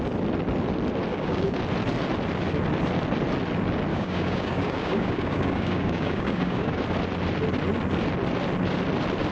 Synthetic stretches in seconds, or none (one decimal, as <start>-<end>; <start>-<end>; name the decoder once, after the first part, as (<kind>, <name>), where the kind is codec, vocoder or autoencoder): 1.1-1.6 (codec, DAC); 3.9-6.8